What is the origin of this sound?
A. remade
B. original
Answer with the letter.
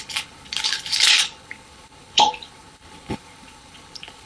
A